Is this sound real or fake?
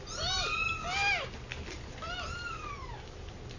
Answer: real